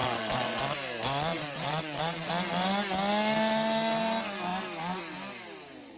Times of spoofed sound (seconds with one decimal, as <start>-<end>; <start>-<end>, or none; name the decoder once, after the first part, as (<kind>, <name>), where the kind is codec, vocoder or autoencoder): 0.0-0.6 (vocoder, WaveNeXt); 1.3-2.3